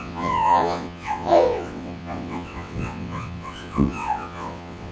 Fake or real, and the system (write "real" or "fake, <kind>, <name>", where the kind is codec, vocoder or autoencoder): fake, vocoder, WaveNeXt